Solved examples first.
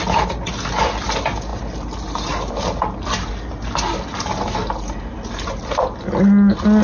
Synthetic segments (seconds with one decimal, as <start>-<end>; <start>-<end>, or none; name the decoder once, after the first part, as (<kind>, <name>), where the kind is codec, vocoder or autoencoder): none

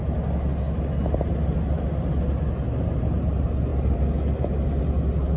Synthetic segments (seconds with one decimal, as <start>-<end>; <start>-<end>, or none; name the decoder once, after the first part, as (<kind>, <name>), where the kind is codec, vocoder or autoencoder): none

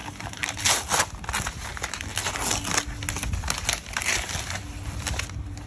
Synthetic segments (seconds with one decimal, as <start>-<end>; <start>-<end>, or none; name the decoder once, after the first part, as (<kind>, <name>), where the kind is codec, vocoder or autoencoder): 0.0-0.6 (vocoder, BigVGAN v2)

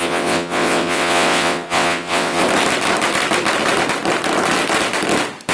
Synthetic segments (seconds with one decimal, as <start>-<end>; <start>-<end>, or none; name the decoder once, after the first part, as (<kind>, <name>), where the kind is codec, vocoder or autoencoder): 0.0-2.4 (vocoder, WaveNeXt)

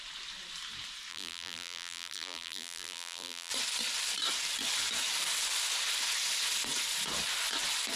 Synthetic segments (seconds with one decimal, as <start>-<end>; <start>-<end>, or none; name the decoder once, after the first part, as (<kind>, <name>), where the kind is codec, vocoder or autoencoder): 1.1-3.5 (vocoder, BigVGAN v2)

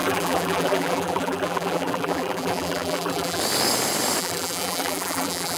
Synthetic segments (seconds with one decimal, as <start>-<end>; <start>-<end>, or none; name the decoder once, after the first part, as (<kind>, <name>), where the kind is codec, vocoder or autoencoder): 0.0-3.4 (vocoder, BigVGAN v2); 4.2-5.6

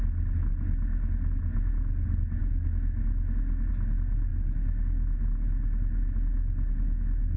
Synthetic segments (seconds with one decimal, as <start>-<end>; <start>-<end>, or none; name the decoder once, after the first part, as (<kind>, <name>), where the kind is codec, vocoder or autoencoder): none